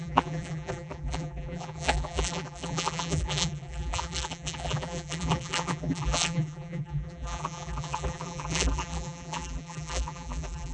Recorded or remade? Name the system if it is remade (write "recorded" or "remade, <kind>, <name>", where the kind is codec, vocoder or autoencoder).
remade, vocoder, BigVGAN v2